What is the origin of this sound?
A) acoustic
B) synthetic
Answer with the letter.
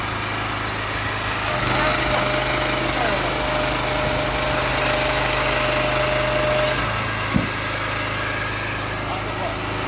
A